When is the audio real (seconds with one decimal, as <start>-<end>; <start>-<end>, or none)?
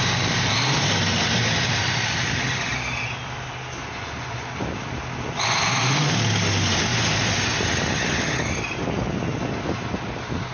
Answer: 0.0-3.8; 4.5-10.5